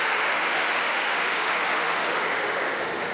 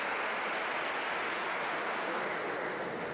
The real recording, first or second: second